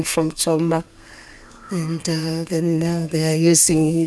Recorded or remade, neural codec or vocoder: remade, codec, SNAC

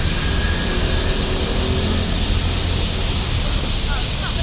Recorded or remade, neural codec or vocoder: recorded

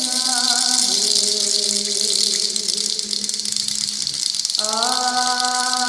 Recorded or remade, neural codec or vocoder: recorded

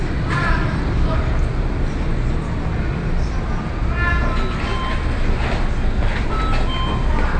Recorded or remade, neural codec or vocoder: recorded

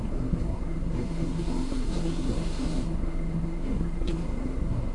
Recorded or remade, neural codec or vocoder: remade, codec, SNAC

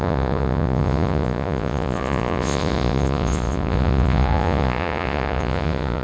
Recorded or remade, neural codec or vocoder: remade, vocoder, Vocos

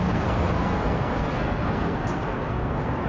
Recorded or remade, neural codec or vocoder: remade, codec, SNAC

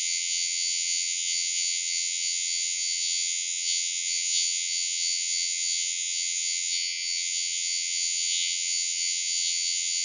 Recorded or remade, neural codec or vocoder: remade, vocoder, HiFi-GAN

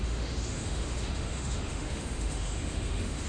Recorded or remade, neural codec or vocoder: remade, autoencoder, DAC-VAE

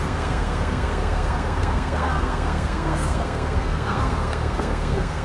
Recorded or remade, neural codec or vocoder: remade, codec, SNAC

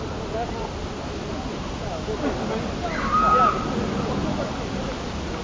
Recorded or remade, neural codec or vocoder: recorded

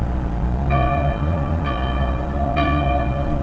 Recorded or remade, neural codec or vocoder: remade, vocoder, Vocos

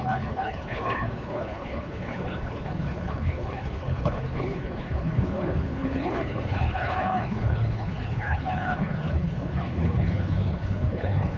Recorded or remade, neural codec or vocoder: remade, codec, HILCodec